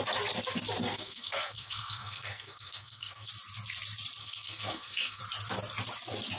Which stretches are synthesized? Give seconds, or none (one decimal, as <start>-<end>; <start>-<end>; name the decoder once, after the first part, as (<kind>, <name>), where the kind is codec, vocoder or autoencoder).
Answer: 0.8-3.3 (codec, SNAC); 4.2-5.2